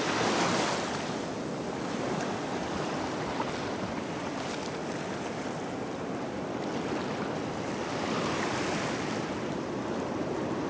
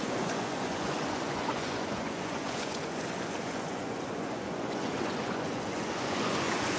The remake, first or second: second